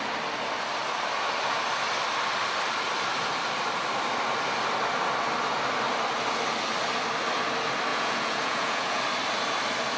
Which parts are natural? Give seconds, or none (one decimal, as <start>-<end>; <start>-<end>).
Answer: 0.0-7.9; 9.0-10.0